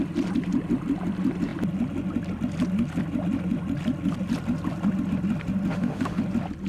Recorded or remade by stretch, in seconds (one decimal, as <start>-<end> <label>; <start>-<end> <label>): 0.0-5.7 recorded; 5.7-6.2 remade; 6.2-6.7 recorded